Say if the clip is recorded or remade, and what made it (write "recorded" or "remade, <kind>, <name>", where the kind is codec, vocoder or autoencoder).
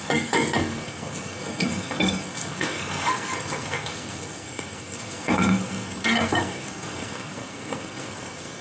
remade, codec, SNAC